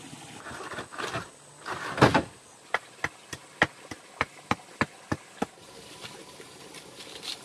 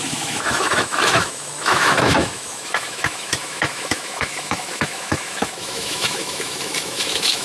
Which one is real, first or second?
first